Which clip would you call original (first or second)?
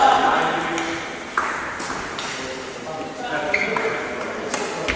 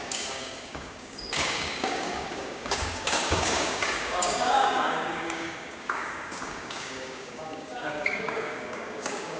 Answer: first